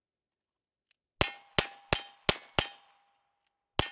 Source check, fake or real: real